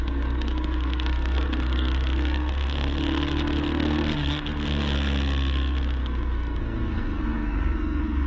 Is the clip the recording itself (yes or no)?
no